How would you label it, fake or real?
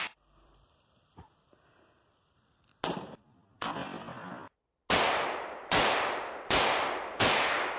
real